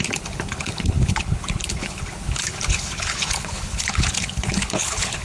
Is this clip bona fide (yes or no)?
no